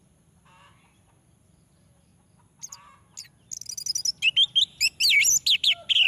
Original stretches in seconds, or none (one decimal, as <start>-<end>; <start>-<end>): 2.1-6.1